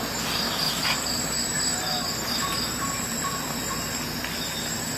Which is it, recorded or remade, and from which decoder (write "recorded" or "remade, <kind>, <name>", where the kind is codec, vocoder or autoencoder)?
recorded